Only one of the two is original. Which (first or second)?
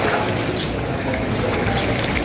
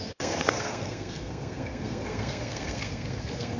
first